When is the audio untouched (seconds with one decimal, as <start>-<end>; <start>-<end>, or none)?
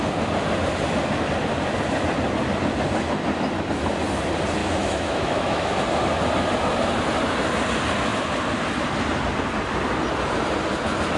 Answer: 0.0-4.6; 5.7-11.2